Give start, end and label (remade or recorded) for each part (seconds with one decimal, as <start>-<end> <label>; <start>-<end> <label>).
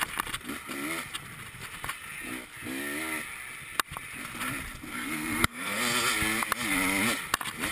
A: 0.0-4.9 recorded; 4.9-5.8 remade; 5.8-7.7 recorded